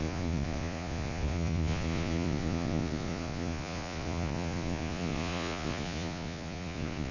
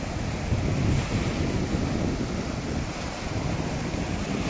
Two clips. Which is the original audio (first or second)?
second